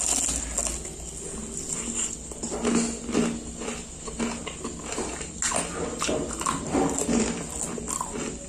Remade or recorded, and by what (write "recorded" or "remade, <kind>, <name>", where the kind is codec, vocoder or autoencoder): recorded